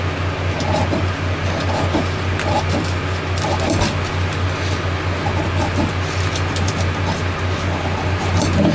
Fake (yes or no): no